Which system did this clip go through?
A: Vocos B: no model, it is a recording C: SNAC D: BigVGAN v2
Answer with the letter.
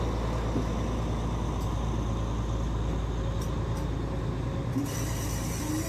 B